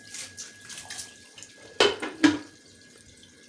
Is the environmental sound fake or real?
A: real